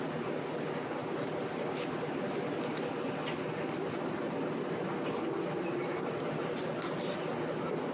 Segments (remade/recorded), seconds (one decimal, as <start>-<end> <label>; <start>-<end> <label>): 0.0-7.9 recorded